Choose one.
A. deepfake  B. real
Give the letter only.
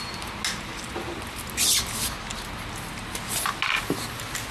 B